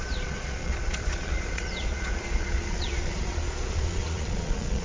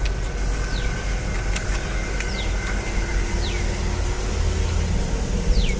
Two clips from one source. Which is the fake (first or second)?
first